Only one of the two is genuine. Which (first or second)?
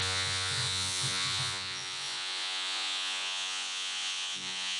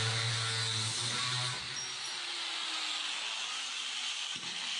second